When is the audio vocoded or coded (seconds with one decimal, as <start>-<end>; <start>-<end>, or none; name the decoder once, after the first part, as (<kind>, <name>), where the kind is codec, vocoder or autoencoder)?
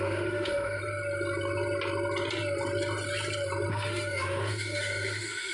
0.0-0.8 (autoencoder, DAC-VAE); 3.7-5.5